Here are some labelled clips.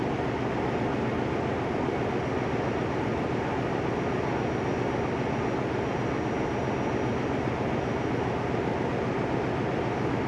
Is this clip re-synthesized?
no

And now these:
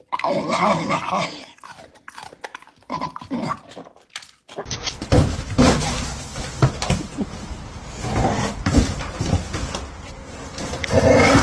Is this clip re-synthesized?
no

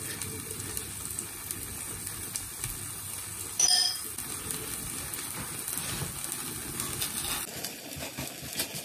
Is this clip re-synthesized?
no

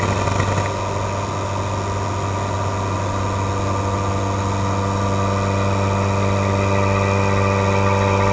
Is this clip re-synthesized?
no